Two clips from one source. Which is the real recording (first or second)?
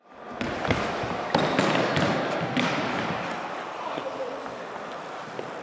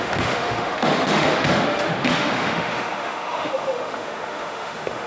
first